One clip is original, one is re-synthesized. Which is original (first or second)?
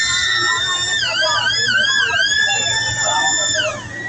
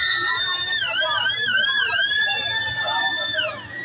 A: first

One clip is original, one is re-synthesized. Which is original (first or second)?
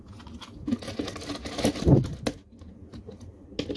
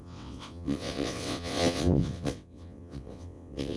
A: first